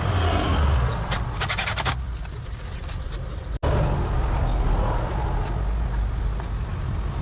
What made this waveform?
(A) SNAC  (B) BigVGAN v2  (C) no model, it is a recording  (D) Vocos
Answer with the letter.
C